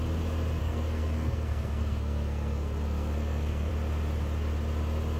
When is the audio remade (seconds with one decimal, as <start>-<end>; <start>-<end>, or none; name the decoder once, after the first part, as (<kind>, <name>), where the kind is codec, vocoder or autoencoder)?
0.6-3.7 (codec, SNAC)

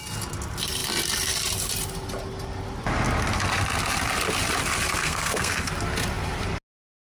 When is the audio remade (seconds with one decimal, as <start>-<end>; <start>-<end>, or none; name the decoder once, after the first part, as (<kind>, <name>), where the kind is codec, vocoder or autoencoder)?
5.0-5.7 (codec, SNAC)